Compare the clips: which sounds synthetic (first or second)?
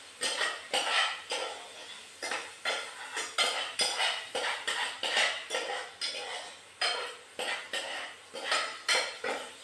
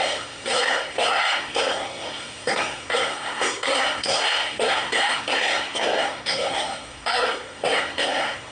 second